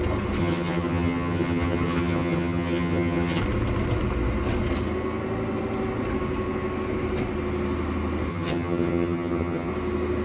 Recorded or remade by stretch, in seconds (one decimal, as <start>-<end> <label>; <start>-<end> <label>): 0.0-0.4 recorded; 0.4-3.4 remade; 3.4-8.3 recorded; 8.3-9.7 remade; 9.7-10.2 recorded